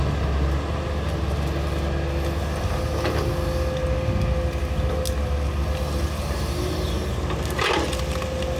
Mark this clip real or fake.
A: real